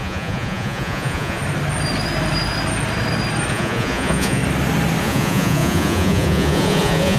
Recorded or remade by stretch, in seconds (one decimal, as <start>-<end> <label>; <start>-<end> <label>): 0.0-1.4 remade; 1.4-3.5 recorded; 3.5-4.4 remade; 4.4-5.0 recorded; 5.0-7.2 remade